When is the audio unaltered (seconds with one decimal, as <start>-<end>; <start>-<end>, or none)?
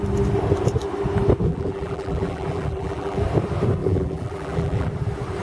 0.0-1.5; 3.2-3.8; 4.9-5.4